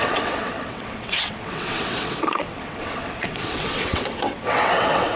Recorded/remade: remade